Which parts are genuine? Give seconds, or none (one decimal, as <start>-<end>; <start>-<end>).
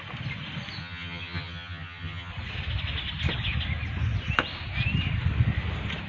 0.0-0.8; 2.3-6.1